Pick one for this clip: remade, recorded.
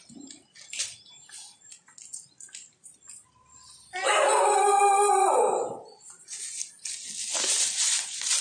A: recorded